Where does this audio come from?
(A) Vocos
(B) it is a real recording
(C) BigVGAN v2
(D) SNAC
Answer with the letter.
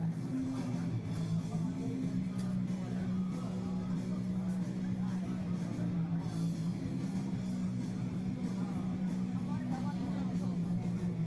B